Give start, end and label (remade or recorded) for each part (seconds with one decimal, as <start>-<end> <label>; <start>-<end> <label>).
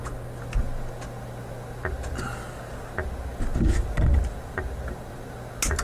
0.0-5.8 recorded